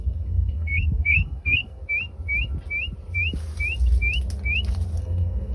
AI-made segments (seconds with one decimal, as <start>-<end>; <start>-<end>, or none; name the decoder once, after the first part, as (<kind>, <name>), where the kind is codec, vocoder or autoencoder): 0.0-1.8 (codec, SNAC); 5.0-5.5